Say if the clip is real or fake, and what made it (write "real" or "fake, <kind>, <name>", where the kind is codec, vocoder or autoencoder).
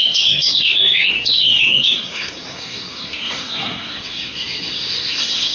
fake, codec, SNAC